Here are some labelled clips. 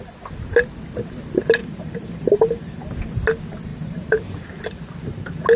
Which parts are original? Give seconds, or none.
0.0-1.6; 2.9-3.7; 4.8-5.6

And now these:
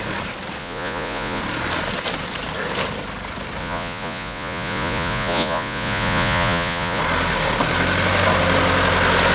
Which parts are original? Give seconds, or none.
0.0-0.6; 1.4-3.6; 7.0-9.3

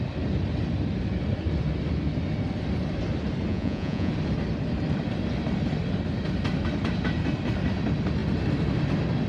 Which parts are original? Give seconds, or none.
0.0-3.5; 4.1-9.3